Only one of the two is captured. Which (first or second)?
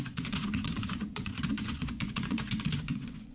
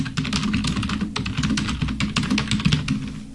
second